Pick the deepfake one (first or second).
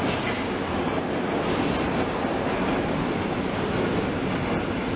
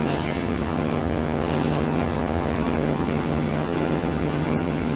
second